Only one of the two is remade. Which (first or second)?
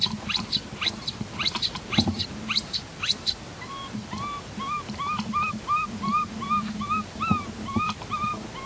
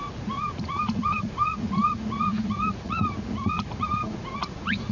second